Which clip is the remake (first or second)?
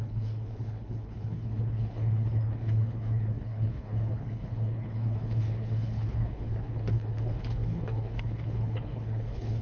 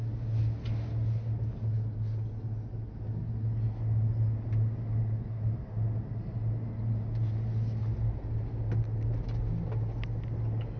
first